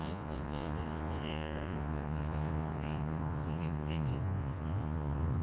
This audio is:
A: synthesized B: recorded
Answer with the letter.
A